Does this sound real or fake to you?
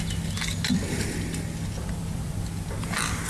real